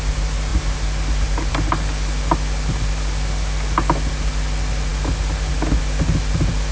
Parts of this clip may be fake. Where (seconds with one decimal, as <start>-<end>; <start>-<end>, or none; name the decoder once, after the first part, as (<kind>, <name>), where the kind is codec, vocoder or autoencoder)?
none